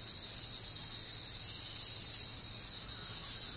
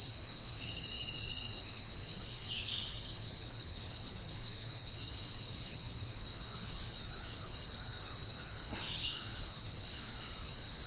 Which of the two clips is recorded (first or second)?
first